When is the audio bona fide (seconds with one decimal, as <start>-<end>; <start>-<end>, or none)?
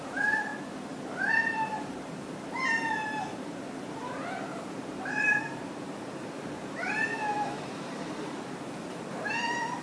0.5-1.1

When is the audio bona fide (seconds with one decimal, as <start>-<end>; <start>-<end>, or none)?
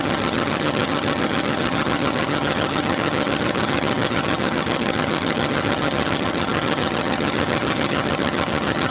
none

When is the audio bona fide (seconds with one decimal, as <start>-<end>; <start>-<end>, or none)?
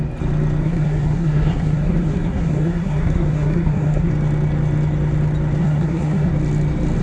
0.0-0.6; 4.1-5.6; 6.3-7.0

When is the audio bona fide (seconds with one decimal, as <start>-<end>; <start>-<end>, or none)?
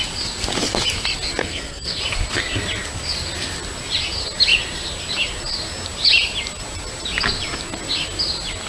0.0-1.4; 2.0-8.7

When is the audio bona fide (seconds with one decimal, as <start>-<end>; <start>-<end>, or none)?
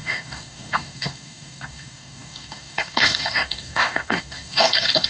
none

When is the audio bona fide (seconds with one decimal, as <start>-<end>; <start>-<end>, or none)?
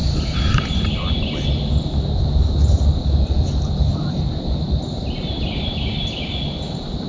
0.7-3.9; 6.1-7.1